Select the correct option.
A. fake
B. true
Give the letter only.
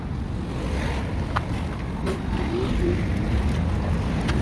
B